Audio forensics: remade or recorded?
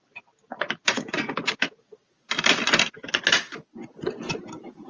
recorded